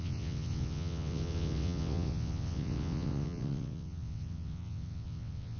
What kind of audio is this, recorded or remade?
remade